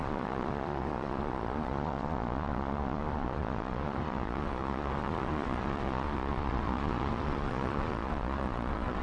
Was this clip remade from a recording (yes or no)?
yes